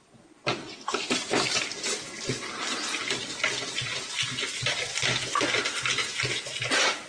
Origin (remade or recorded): recorded